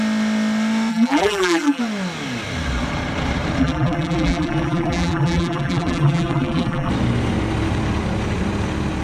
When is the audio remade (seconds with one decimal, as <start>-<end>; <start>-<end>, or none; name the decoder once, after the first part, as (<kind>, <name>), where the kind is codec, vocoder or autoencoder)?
0.9-1.8 (vocoder, BigVGAN v2); 3.6-6.9